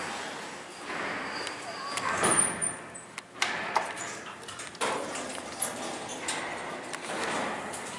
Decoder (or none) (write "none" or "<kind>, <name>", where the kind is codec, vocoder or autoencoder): none